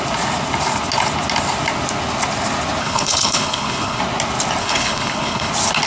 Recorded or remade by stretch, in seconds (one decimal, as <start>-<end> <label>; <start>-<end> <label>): 0.0-2.8 recorded; 2.8-4.0 remade; 4.0-4.6 recorded; 4.6-5.5 remade; 5.5-5.9 recorded